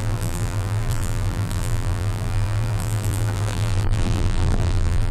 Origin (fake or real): fake